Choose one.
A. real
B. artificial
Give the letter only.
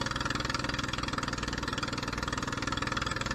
A